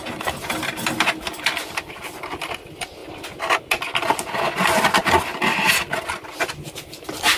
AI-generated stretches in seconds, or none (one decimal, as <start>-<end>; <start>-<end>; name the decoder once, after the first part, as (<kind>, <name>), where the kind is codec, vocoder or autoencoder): none